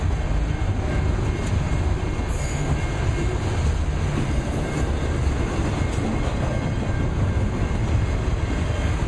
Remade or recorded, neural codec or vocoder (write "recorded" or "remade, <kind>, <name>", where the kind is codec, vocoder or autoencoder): recorded